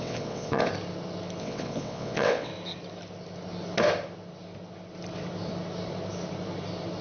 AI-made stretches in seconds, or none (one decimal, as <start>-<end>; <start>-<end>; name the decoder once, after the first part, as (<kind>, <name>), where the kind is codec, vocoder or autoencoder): 0.0-0.7 (vocoder, WaveNeXt); 1.4-2.5